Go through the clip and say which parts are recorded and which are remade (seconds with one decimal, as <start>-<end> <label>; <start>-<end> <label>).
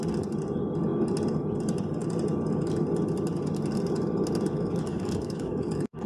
0.0-4.9 recorded; 4.9-6.1 remade